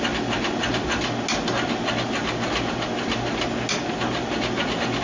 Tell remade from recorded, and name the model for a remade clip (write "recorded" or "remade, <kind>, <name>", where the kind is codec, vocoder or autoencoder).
recorded